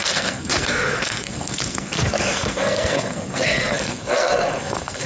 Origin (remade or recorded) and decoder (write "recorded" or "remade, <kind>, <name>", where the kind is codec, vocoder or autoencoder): remade, codec, SNAC